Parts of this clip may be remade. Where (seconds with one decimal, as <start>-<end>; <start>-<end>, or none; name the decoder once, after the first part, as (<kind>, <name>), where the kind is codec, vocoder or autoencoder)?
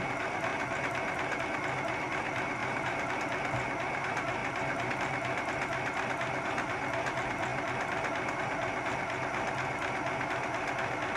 2.6-3.1 (vocoder, BigVGAN v2); 4.4-4.9